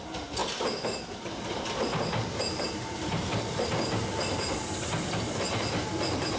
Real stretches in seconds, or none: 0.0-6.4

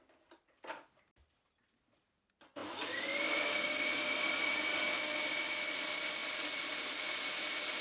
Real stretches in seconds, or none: 0.0-2.6; 5.0-6.2

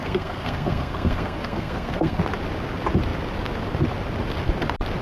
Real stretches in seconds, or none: 2.2-5.0

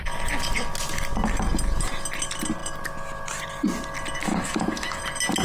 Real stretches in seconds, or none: 0.0-4.2; 5.0-5.4